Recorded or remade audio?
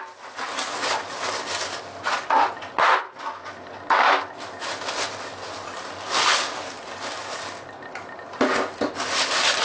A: recorded